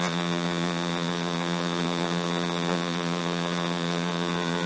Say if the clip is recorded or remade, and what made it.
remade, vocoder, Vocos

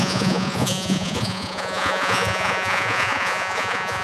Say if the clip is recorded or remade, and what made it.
remade, vocoder, Vocos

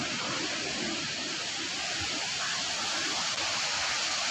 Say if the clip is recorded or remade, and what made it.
recorded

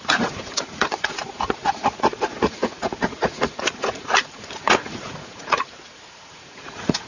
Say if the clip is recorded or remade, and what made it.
remade, vocoder, Vocos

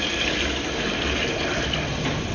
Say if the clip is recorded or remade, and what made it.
recorded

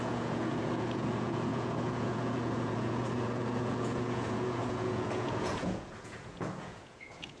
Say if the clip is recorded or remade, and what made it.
remade, vocoder, Vocos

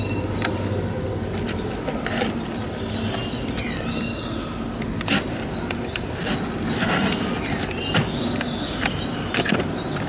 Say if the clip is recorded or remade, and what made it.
recorded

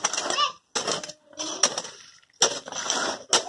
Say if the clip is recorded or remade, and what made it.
recorded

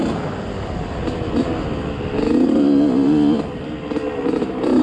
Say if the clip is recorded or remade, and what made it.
recorded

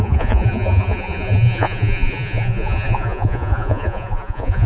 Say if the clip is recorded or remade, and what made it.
remade, vocoder, Vocos